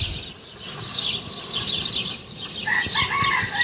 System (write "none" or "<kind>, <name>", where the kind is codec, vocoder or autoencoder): none